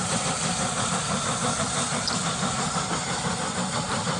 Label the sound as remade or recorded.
remade